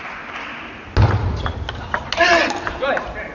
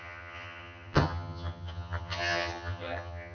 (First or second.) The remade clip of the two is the second